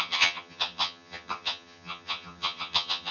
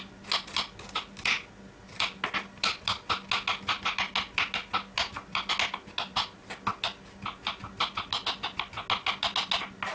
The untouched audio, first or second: second